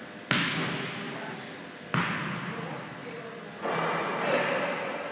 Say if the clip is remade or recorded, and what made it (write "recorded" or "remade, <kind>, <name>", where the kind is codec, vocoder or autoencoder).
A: recorded